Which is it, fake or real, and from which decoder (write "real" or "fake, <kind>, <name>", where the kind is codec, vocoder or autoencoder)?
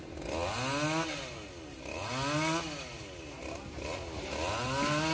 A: real